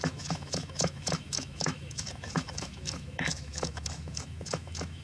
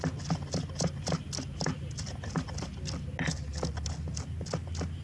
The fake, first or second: first